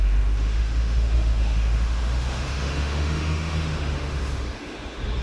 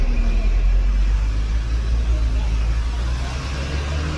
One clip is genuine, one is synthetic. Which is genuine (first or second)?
second